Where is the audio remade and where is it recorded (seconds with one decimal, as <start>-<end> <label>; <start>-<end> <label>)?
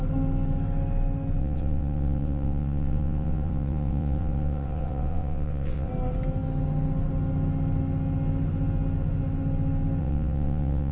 0.0-1.4 recorded; 1.4-5.9 remade; 5.9-10.0 recorded; 10.0-10.9 remade